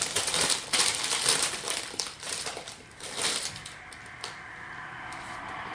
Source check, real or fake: fake